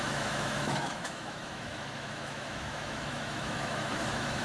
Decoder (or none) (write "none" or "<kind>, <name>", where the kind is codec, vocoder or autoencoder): autoencoder, DAC-VAE